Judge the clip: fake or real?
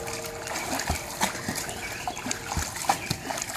real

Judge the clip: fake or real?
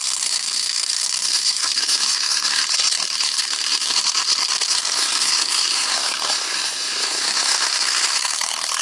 fake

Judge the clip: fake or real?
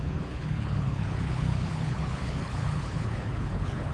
fake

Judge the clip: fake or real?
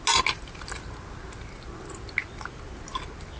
real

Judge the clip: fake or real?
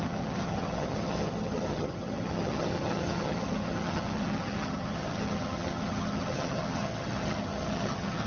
fake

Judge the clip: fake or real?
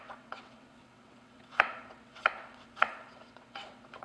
fake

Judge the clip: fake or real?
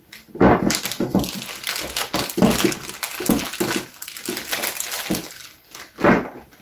real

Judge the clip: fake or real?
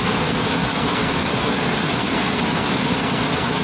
fake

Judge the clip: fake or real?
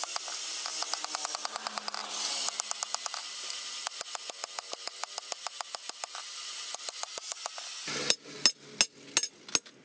real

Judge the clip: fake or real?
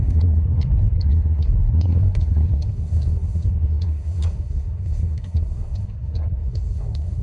fake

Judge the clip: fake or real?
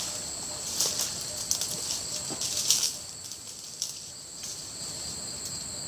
real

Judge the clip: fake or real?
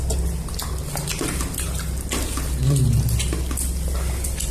real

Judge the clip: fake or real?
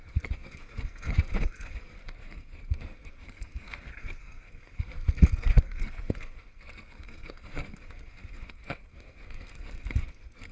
fake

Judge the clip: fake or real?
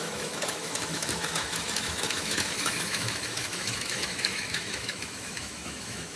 fake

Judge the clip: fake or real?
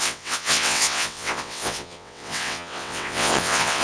fake